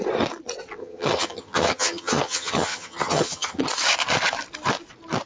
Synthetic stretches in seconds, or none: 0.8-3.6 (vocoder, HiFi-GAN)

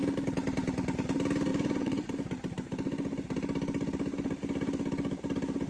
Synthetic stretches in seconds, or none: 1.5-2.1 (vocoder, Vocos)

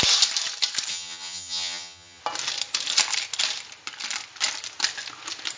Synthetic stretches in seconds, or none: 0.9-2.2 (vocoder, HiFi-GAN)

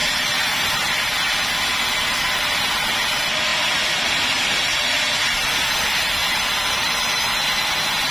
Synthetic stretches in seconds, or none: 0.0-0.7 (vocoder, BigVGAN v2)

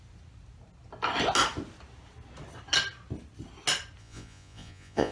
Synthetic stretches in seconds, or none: 4.0-5.1 (vocoder, Vocos)

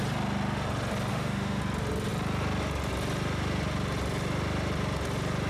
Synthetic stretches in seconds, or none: 1.1-1.6 (autoencoder, DAC-VAE)

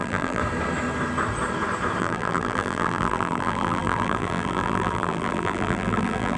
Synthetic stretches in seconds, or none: 0.0-0.4 (vocoder, BigVGAN v2); 2.0-6.4

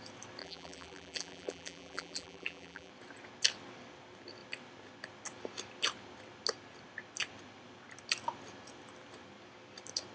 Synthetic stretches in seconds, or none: 0.4-2.9 (vocoder, BigVGAN v2)